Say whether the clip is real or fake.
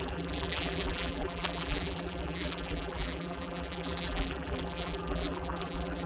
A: fake